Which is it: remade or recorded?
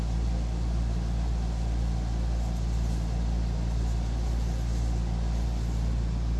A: recorded